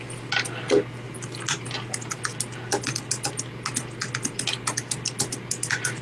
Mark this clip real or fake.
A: real